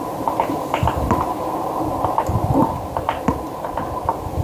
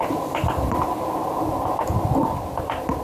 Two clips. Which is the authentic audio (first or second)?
second